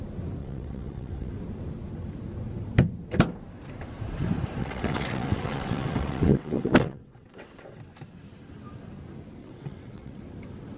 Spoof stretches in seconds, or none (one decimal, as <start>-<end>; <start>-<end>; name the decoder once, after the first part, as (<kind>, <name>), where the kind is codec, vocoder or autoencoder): 0.4-1.3 (vocoder, WaveNeXt); 4.6-7.8; 9.4-10.2